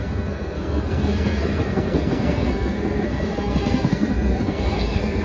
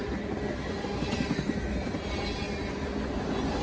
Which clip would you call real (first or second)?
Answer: second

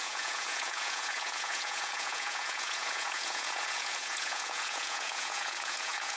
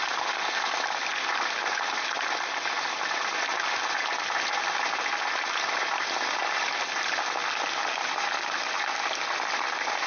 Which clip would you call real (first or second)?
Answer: second